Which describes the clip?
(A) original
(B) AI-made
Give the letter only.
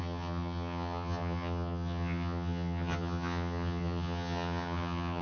B